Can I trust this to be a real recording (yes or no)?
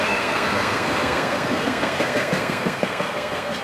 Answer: no